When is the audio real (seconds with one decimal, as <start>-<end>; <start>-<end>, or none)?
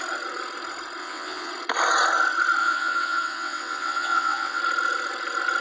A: 0.0-1.0; 1.5-2.6; 4.6-5.6